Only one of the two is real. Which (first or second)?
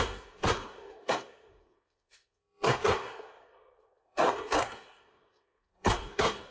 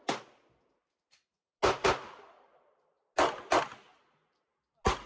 second